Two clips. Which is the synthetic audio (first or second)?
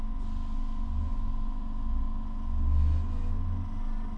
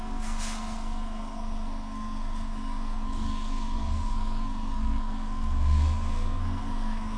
second